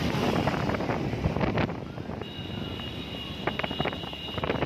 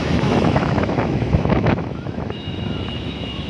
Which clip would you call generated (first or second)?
second